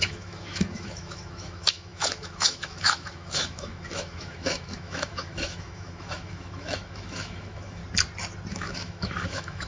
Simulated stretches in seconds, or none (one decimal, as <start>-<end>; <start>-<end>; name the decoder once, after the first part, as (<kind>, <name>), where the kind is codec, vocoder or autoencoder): 0.0-7.8 (autoencoder, DAC-VAE); 8.5-9.7